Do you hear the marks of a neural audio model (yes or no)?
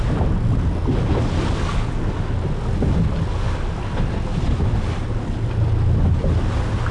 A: no